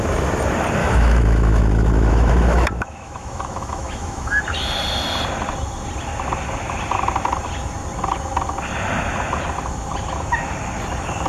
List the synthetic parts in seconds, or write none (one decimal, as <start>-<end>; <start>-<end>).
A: 0.8-4.4